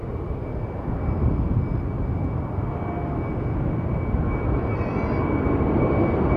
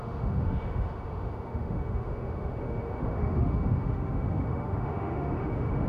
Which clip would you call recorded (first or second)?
first